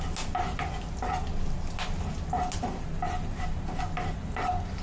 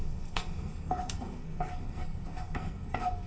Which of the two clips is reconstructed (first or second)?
second